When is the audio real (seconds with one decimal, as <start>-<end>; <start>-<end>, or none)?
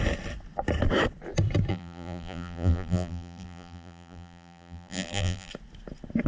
0.0-1.7; 5.5-6.3